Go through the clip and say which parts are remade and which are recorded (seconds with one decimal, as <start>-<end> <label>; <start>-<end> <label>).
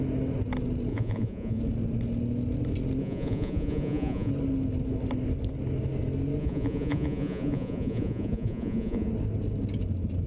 0.0-0.9 recorded; 0.9-1.6 remade; 1.6-3.0 recorded; 3.0-4.3 remade; 4.3-6.4 recorded; 6.4-9.1 remade; 9.1-10.3 recorded